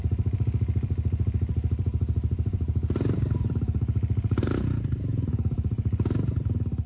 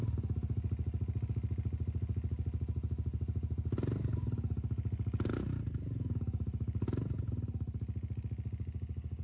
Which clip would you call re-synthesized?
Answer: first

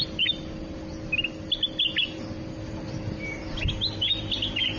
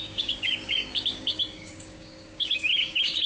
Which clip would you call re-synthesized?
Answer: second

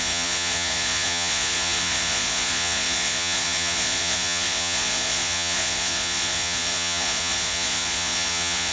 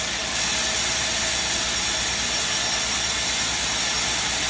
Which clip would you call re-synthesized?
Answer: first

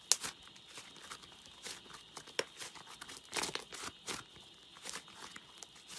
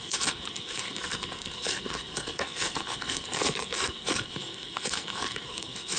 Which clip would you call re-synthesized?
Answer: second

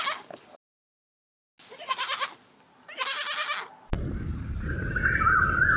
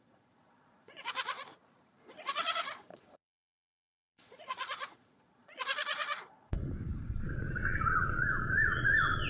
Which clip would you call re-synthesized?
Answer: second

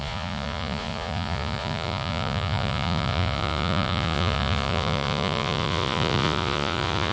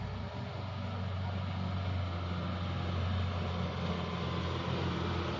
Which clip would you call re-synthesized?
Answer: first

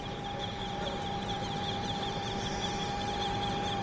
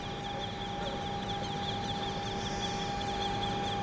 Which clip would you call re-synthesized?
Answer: first